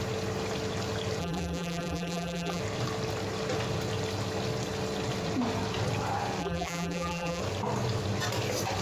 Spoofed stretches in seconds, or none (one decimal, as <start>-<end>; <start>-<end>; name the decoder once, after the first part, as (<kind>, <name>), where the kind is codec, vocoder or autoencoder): 1.2-2.6 (vocoder, BigVGAN v2); 6.4-7.4